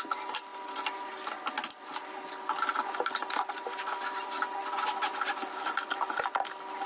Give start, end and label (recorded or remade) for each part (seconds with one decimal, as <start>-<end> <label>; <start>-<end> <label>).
0.0-6.9 recorded